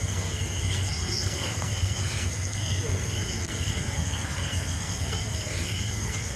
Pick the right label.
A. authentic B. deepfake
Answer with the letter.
B